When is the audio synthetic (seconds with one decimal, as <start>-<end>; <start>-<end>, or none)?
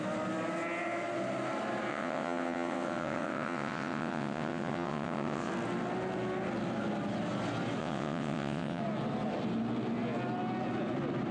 1.9-5.5; 7.8-8.8